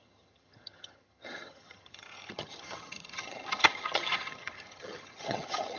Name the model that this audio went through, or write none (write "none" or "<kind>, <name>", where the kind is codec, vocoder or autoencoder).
vocoder, HiFi-GAN